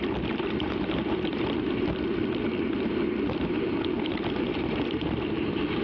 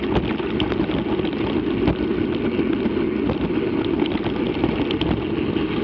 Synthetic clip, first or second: first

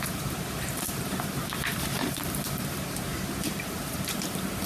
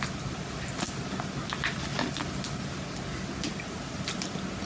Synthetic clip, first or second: first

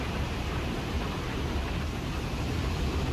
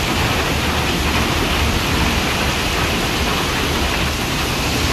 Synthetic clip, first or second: first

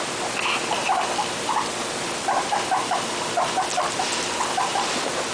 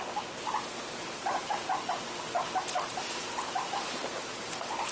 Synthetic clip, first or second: second